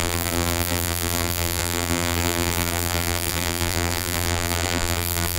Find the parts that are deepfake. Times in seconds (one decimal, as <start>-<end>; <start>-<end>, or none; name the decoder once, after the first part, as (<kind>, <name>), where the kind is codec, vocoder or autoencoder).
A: 0.0-5.4 (vocoder, BigVGAN v2)